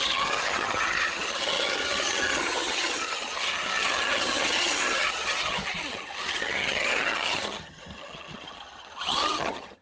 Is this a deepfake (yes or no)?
yes